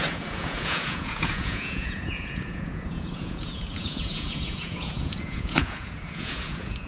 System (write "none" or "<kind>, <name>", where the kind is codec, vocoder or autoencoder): vocoder, Vocos